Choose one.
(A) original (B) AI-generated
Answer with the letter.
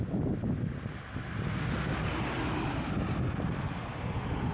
A